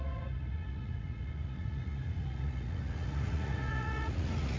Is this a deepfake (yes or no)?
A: yes